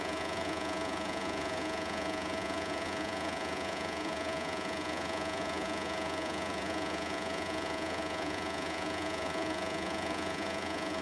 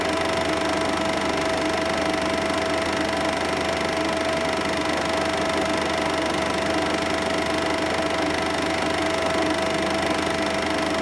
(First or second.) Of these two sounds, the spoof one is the first